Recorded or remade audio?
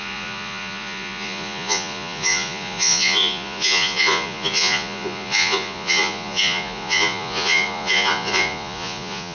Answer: remade